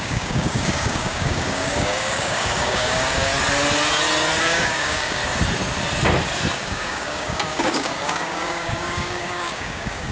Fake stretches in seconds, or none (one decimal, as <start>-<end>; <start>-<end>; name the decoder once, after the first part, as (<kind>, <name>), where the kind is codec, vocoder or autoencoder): 0.0-3.3 (codec, DAC); 4.4-5.2; 6.5-10.1